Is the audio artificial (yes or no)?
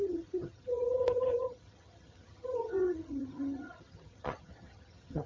yes